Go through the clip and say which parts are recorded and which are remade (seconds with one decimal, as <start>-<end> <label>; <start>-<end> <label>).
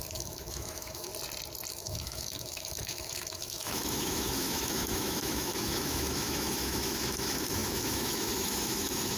0.0-1.1 remade; 1.1-1.7 recorded; 1.7-9.2 remade